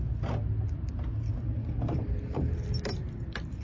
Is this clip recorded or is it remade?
recorded